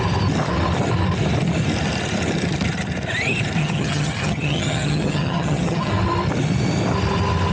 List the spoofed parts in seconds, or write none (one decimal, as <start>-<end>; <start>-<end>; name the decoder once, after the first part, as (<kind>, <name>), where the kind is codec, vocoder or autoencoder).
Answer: 3.6-5.9 (vocoder, HiFi-GAN)